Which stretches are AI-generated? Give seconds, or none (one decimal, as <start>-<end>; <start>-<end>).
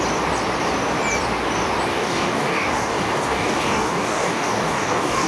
1.9-5.3